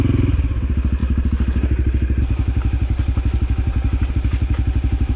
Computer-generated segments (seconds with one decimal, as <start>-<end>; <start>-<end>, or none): none